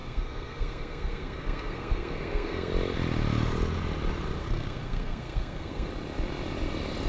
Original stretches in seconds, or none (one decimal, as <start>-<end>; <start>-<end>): 2.7-4.4; 5.9-7.1